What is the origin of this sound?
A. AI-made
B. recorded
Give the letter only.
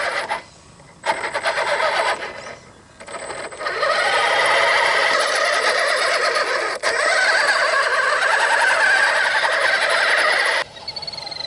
B